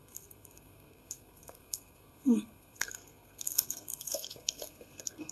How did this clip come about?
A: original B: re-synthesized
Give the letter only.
B